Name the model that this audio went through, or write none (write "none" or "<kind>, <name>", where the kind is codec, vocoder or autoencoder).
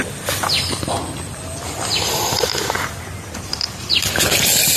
none